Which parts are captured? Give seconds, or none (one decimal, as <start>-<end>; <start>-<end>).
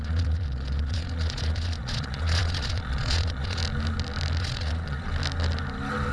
3.6-4.4; 5.1-6.1